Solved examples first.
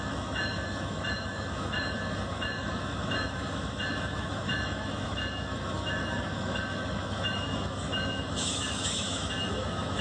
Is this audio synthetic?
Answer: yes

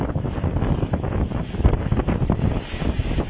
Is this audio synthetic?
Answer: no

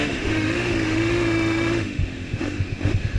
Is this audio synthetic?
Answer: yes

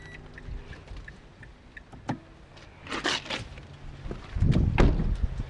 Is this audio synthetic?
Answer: no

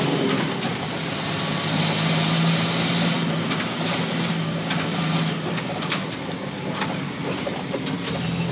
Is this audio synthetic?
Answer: no